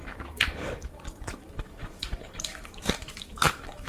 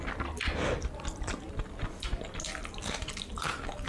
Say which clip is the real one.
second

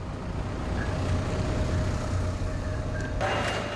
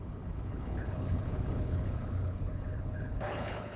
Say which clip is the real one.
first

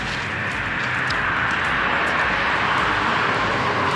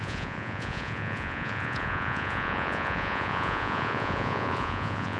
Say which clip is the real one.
first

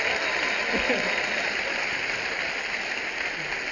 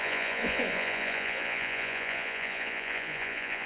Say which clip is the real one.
first